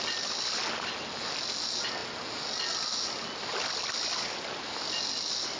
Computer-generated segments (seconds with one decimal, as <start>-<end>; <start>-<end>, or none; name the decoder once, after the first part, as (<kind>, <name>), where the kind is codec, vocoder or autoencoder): none